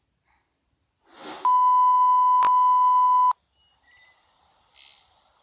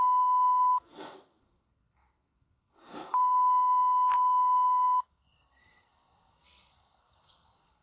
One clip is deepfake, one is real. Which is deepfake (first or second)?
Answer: second